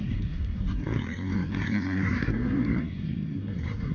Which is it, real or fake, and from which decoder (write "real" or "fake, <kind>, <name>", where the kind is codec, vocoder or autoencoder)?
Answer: fake, codec, SNAC